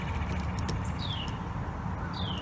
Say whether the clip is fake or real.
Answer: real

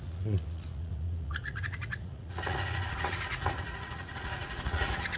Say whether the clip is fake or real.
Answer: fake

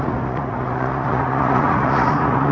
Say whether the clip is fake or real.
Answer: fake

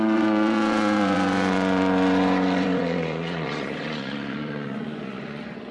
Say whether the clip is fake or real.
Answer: fake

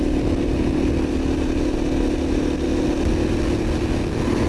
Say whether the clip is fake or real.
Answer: real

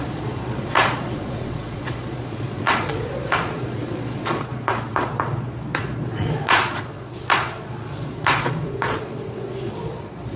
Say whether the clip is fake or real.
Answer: fake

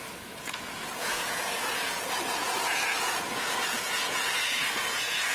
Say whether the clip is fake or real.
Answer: fake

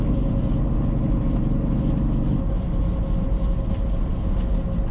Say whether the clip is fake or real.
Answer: real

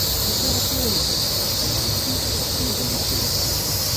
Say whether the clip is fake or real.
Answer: real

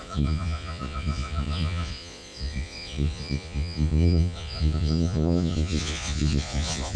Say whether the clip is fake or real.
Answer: fake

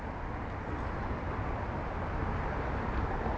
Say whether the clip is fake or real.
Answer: real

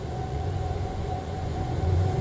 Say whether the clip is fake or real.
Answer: fake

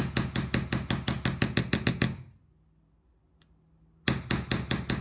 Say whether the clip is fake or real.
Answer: real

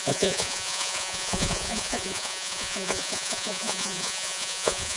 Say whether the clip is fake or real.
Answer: fake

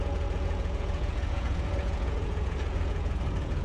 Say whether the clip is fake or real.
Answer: fake